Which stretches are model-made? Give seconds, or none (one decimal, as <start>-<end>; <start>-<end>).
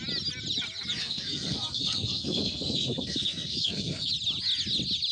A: 1.0-4.1